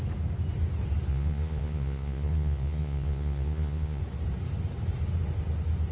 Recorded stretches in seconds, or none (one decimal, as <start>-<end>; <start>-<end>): 0.0-1.1; 4.0-5.9